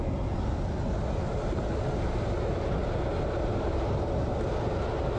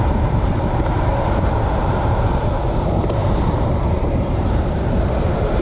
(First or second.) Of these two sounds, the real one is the first